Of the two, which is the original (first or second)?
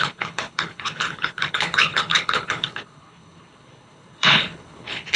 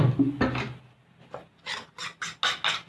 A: second